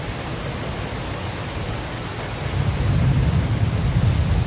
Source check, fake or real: real